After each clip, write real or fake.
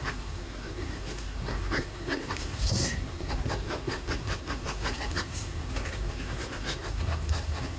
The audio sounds fake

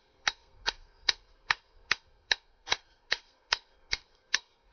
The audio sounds fake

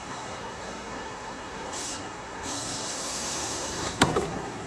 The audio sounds fake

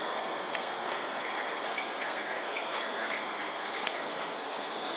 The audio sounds fake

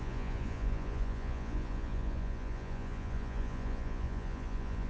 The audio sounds fake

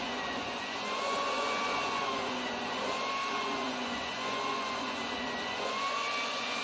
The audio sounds fake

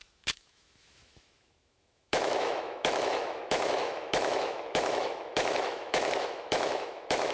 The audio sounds fake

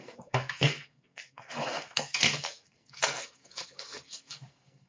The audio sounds fake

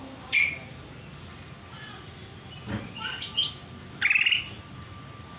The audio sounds real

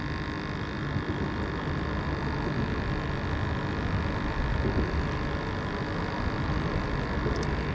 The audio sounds real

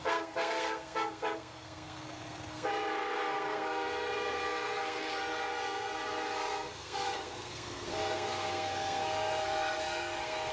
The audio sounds fake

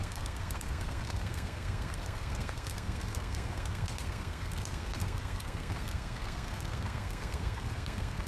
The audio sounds fake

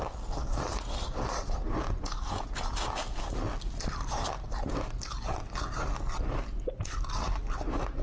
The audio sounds real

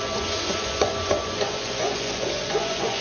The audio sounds fake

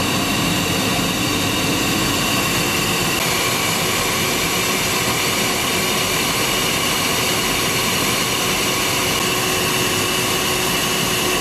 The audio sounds real